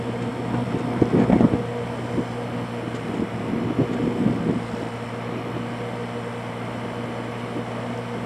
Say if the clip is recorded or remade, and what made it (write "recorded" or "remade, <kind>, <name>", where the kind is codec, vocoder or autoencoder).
recorded